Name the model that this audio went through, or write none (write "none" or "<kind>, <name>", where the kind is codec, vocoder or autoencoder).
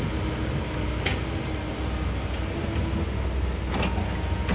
none